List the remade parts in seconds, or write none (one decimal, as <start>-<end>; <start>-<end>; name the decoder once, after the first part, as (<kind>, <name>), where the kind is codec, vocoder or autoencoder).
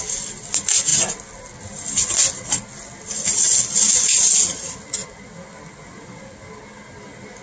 none